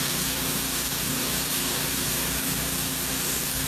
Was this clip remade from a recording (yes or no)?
yes